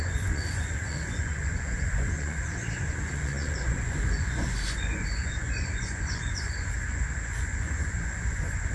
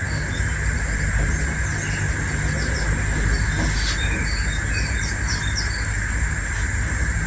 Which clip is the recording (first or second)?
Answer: second